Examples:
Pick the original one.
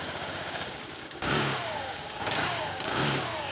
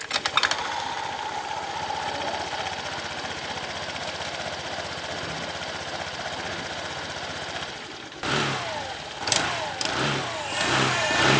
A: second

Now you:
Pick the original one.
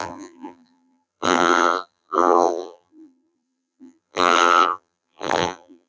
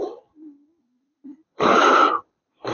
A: second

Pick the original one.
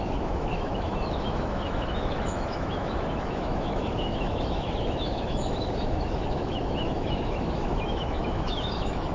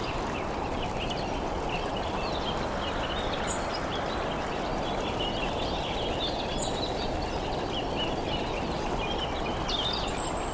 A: second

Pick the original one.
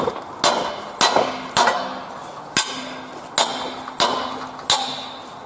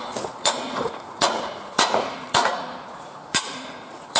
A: first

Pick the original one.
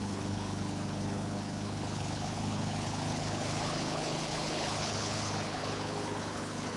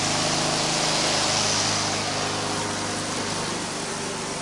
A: second